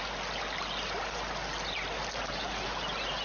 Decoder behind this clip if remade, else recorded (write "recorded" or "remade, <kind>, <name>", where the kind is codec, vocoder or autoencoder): recorded